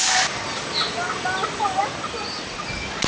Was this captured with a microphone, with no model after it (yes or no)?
yes